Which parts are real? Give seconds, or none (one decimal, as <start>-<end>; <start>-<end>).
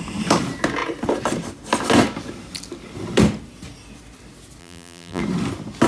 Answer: 0.0-4.6; 5.2-5.9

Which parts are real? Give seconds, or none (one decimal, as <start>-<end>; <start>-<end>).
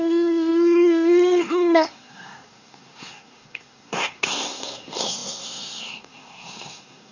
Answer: none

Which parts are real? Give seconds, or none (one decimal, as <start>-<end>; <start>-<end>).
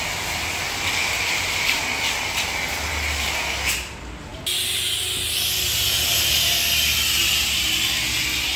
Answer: 0.0-1.0; 1.8-8.6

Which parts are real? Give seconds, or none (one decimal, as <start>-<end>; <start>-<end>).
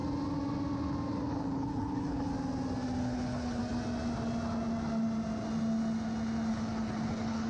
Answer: 0.0-1.3; 2.3-3.0; 3.6-6.5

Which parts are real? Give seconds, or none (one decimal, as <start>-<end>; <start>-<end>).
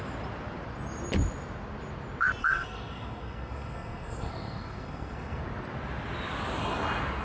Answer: 0.0-2.4; 5.4-7.2